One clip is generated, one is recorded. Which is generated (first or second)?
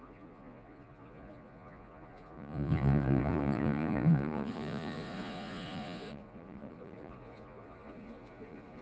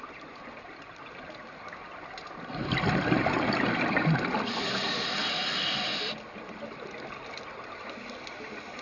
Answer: first